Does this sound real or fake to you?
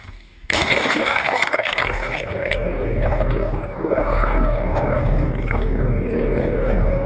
fake